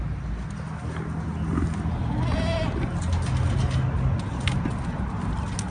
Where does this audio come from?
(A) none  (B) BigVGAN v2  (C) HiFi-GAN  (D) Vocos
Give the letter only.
A